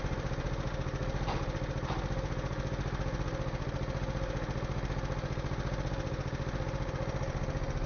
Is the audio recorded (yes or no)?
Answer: yes